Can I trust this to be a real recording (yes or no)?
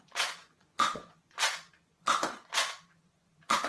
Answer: no